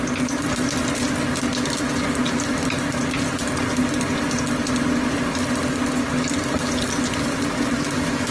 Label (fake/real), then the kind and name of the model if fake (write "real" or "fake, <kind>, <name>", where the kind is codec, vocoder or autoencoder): real